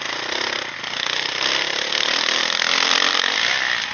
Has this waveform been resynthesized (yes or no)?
no